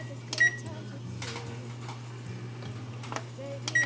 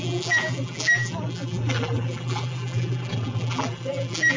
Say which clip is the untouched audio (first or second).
first